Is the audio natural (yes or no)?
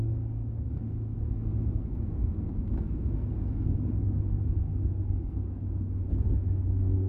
no